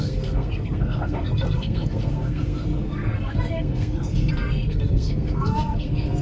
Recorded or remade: remade